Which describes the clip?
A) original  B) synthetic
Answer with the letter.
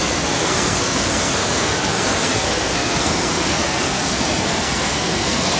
B